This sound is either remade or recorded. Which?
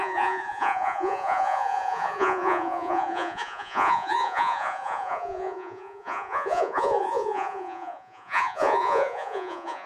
remade